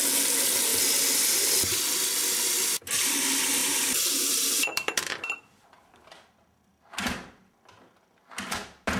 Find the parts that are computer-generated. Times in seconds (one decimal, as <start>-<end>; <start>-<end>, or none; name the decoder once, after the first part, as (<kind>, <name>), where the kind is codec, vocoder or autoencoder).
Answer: 3.6-5.2 (vocoder, BigVGAN v2)